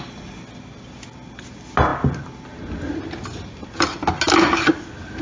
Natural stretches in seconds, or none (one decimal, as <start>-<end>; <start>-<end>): 0.0-5.2